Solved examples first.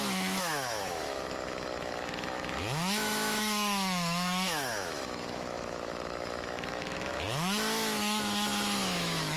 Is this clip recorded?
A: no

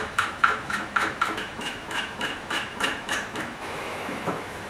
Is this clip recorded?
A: no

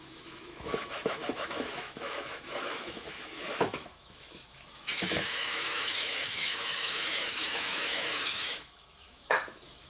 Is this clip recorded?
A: no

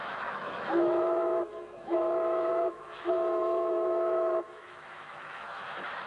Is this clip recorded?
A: no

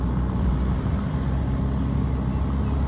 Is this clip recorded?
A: yes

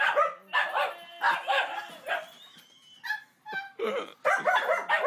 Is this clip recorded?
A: yes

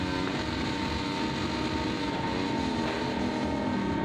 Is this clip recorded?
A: yes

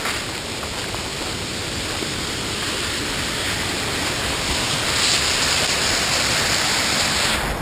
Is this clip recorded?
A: yes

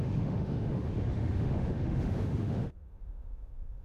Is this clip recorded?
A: no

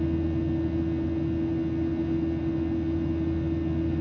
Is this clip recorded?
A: yes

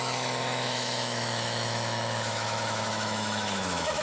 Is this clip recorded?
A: no